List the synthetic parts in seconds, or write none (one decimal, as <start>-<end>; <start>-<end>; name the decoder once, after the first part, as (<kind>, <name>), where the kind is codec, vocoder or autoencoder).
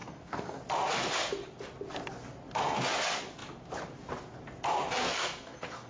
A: 0.0-0.6 (codec, SNAC); 5.0-5.9